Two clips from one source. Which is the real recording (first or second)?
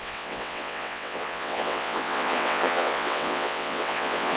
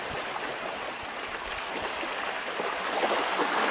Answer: second